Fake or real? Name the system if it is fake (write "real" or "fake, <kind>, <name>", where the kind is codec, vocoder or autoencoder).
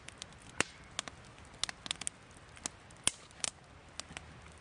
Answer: real